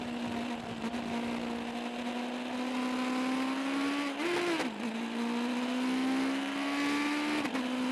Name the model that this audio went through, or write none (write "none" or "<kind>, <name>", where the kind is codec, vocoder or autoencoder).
none